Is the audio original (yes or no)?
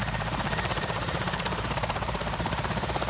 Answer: no